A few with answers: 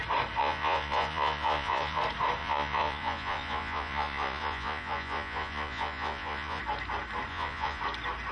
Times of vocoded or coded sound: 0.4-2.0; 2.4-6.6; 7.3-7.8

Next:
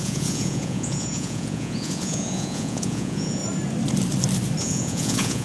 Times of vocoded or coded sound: 0.0-3.4; 4.6-5.4

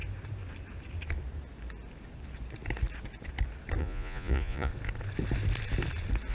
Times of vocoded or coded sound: 3.8-4.7

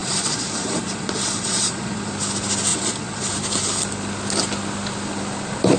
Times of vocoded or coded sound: 0.0-2.1; 2.7-3.3

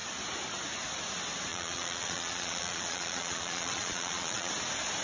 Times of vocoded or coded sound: 1.5-4.5

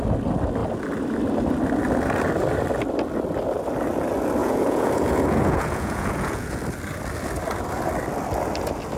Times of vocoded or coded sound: 4.4-6.6

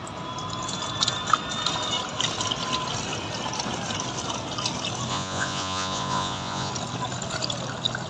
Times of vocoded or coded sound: 5.1-6.7